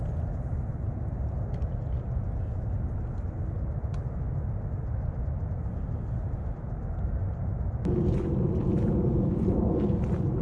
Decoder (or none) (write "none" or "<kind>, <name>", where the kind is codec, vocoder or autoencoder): none